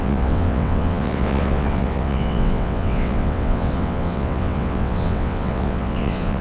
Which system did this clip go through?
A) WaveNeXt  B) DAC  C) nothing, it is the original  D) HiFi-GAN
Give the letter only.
A